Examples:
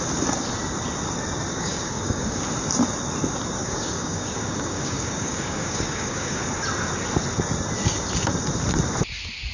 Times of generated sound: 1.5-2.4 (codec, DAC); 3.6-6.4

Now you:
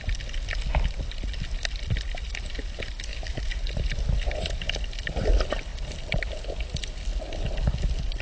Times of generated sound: 3.1-3.7 (codec, DAC)

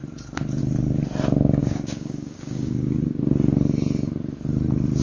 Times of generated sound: 1.6-3.2 (codec, DAC)

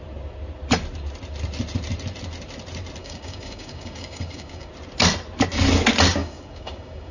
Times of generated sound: 3.0-4.7 (codec, DAC); 6.2-7.1

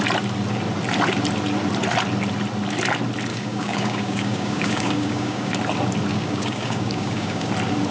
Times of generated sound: 3.3-5.5 (codec, DAC); 6.1-7.5